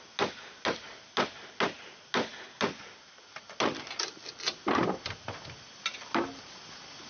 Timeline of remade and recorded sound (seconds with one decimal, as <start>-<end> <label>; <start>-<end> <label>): 0.0-7.1 recorded